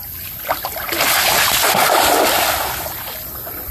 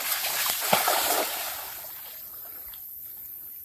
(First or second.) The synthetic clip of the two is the second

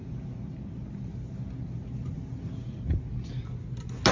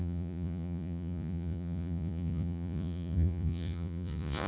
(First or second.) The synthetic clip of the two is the second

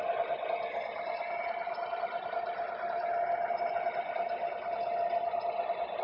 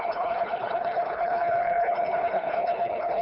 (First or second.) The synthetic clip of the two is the second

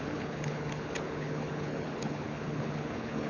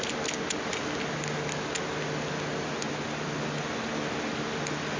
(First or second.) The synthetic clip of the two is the first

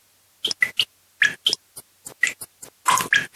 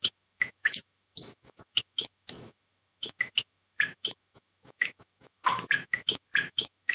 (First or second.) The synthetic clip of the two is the second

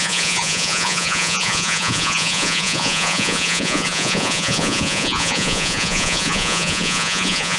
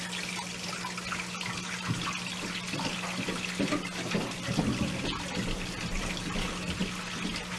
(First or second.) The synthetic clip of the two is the first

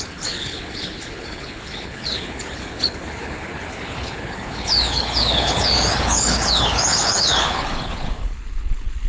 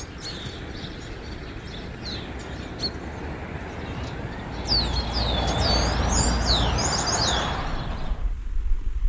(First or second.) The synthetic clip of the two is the first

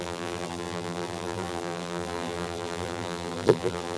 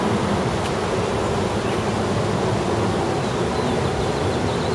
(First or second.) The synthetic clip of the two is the first